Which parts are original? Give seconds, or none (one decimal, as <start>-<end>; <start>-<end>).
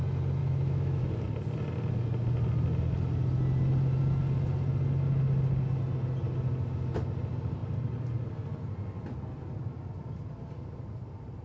0.0-0.4; 1.0-11.4